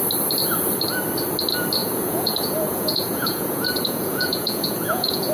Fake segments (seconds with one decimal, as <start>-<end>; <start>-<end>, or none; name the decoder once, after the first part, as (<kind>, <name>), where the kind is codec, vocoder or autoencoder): 1.8-5.3 (vocoder, Vocos)